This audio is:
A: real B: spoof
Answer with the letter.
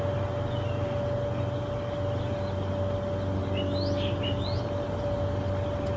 A